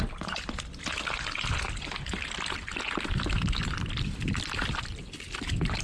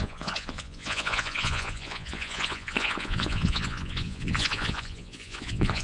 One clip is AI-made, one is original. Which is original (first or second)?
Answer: first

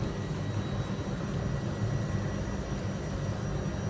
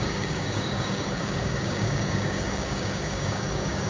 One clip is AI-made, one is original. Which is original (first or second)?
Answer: first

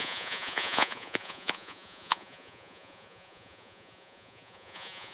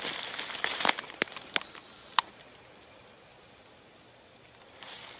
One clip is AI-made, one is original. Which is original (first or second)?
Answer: second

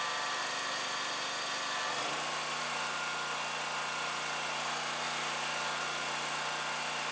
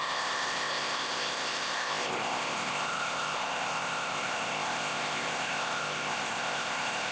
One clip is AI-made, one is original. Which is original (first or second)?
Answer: first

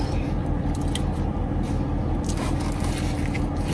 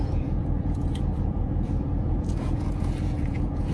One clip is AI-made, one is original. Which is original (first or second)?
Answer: first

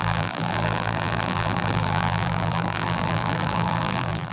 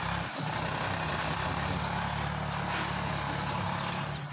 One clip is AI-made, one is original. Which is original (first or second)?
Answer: second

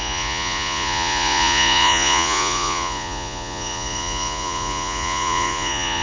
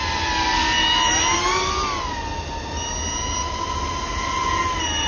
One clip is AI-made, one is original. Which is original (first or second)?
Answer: second